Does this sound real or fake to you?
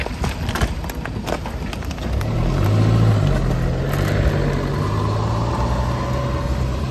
real